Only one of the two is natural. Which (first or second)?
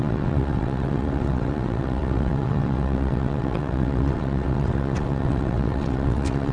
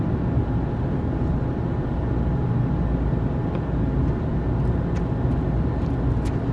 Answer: second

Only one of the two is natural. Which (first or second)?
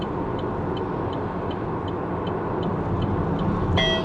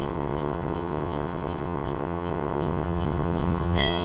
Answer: first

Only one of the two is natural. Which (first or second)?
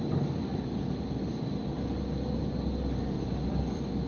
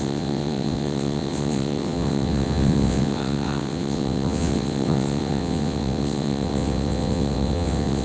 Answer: first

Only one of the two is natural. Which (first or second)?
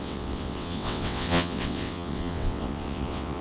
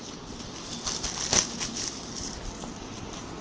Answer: second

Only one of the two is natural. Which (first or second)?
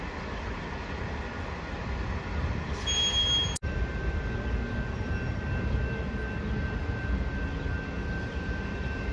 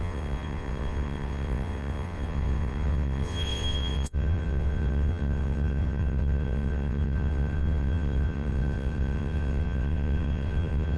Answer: first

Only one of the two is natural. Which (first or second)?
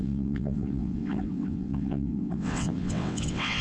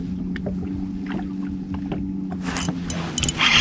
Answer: second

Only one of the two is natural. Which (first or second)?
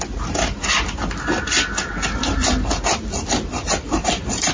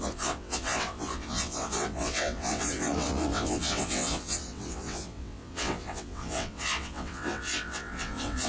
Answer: first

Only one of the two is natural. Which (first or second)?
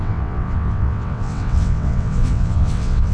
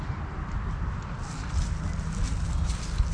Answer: second